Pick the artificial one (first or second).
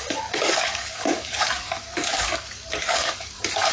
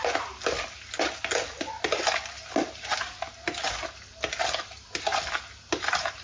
first